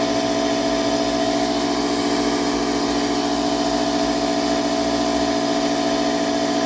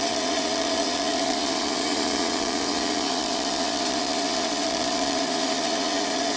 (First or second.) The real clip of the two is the first